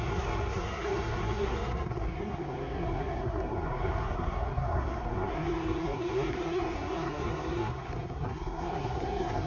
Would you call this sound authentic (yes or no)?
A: no